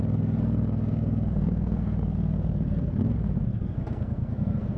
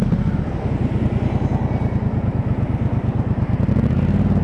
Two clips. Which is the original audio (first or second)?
second